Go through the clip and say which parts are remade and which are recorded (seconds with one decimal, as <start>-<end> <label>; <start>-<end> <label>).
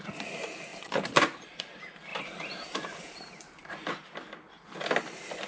0.0-0.7 recorded; 0.7-1.6 remade; 1.6-2.1 recorded; 2.1-3.9 remade; 3.9-5.5 recorded